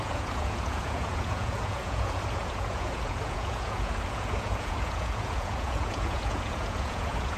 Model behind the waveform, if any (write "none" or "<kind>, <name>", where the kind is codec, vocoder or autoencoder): vocoder, Vocos